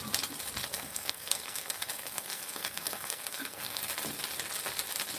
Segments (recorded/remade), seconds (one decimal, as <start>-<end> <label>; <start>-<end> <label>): 0.0-0.7 recorded; 0.7-3.8 remade; 3.8-5.2 recorded